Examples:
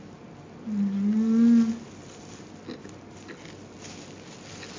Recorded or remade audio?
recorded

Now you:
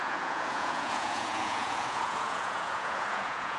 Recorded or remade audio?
remade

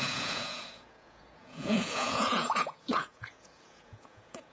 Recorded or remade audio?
remade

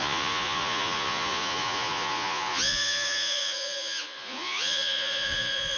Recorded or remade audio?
remade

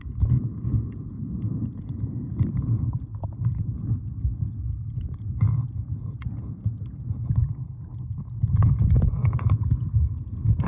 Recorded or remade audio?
remade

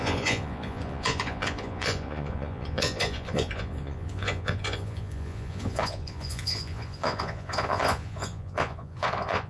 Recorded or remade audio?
remade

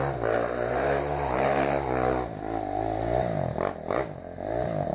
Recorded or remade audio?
recorded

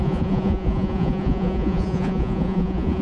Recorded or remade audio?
remade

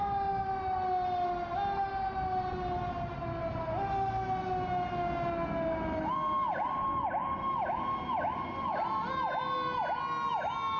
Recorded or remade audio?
recorded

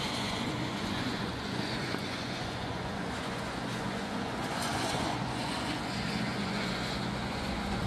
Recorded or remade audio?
remade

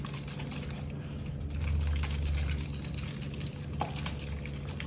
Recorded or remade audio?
recorded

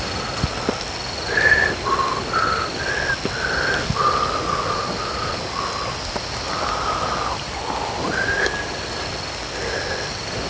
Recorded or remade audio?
recorded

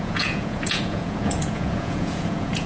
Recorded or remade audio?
remade